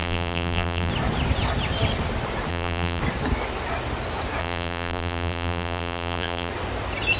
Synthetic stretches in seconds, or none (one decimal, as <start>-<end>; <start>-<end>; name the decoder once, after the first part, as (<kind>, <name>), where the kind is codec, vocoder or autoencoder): 0.0-0.9 (vocoder, BigVGAN v2); 2.5-3.0; 4.4-6.5